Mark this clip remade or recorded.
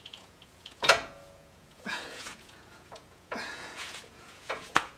remade